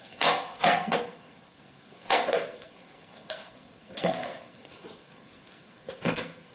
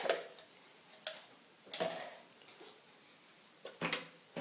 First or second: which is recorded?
second